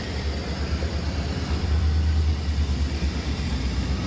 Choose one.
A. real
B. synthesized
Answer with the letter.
B